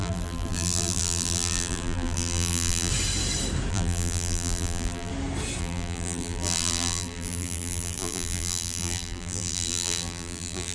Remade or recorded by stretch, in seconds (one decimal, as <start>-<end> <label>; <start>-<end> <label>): 0.0-2.9 remade; 2.9-3.7 recorded; 3.7-5.1 remade; 5.1-5.6 recorded; 5.6-10.7 remade